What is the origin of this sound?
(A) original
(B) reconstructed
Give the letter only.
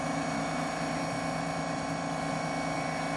A